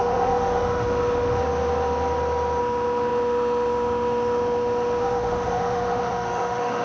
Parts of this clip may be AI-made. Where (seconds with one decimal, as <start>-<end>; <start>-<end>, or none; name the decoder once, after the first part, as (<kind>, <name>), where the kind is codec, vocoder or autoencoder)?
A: 0.0-1.4 (autoencoder, DAC-VAE); 2.6-6.8